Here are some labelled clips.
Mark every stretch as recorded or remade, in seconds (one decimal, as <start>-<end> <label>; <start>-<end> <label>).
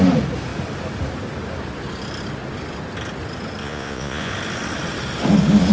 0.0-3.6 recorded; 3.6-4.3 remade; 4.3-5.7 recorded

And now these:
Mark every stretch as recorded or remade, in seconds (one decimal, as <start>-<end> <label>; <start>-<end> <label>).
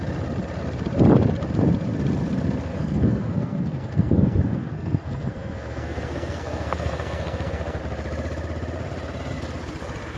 0.0-2.7 recorded; 2.7-7.8 remade; 7.8-10.2 recorded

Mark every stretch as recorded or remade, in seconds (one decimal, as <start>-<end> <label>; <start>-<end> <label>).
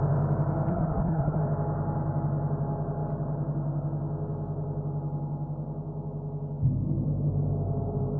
0.0-0.7 recorded; 0.7-1.4 remade; 1.4-8.2 recorded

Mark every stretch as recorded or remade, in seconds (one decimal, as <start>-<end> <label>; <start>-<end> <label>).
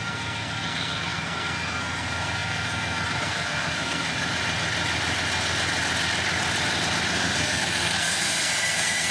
0.0-4.1 remade; 4.1-7.1 recorded; 7.1-9.1 remade